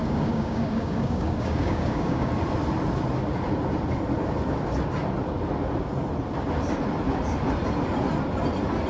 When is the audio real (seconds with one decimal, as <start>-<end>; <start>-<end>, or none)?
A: 2.3-8.9